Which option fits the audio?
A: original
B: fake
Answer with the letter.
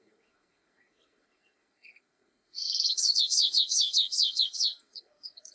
B